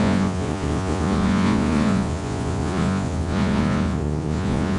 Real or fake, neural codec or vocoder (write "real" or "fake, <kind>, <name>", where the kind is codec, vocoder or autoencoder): fake, vocoder, Vocos